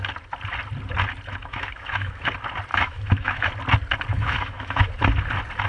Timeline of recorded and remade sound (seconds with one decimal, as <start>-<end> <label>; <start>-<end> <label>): 0.0-1.4 recorded; 1.4-2.3 remade; 2.3-2.7 recorded; 2.7-3.5 remade; 3.5-4.1 recorded; 4.1-4.9 remade; 4.9-5.7 recorded